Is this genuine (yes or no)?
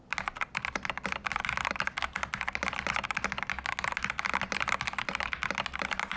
yes